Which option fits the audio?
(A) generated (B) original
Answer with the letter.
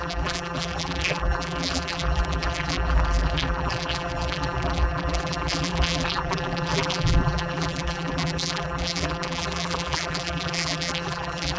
A